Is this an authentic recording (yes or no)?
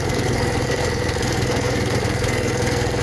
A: no